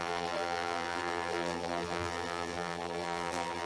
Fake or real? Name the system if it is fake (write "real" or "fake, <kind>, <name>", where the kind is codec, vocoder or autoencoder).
fake, vocoder, BigVGAN v2